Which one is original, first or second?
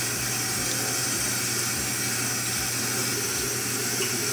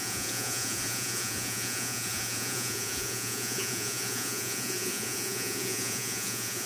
first